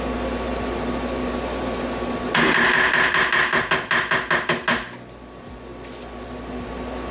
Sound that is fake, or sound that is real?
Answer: real